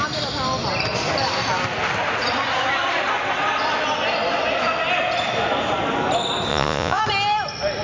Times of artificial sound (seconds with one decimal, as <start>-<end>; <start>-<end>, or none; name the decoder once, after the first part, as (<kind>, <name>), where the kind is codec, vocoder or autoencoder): 6.5-7.0 (vocoder, Vocos)